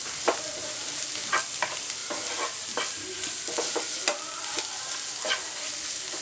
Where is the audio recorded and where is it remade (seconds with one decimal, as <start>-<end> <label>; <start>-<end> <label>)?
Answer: 0.0-6.2 recorded